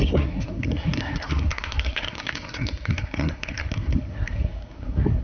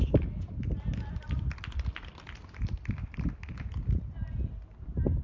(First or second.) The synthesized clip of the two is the first